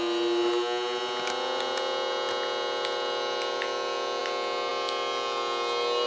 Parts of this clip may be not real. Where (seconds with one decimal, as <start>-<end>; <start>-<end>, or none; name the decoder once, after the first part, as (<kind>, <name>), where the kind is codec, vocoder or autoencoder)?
none